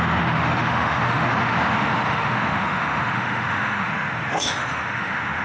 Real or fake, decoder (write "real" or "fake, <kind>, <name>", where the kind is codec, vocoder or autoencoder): fake, autoencoder, DAC-VAE